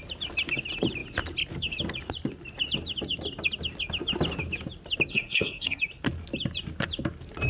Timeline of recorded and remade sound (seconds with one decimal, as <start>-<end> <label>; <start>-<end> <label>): 0.0-5.1 recorded; 5.1-5.8 remade; 5.8-7.5 recorded